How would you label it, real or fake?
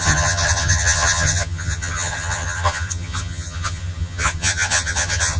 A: fake